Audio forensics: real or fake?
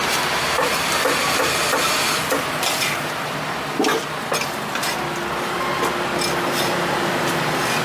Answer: real